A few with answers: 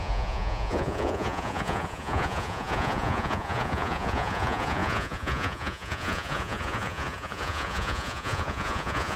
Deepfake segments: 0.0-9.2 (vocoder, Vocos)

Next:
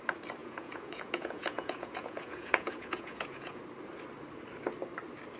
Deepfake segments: 0.4-3.6 (vocoder, Vocos)

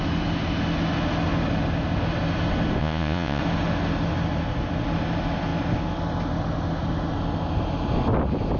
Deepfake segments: 2.8-3.4 (vocoder, Vocos)

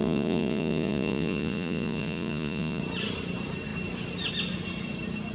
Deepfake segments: 0.0-2.8 (vocoder, Vocos)

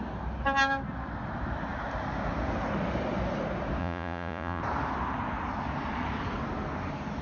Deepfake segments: 3.8-4.6 (vocoder, Vocos)

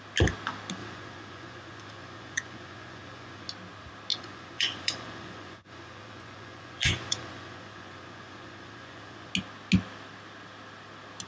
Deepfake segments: 0.8-3.5 (vocoder, Vocos); 4.1-9.3

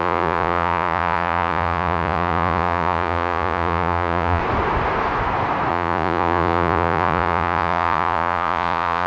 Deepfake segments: 0.0-4.4 (vocoder, Vocos); 5.7-9.1